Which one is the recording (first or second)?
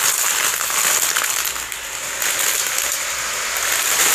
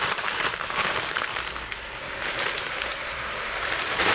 first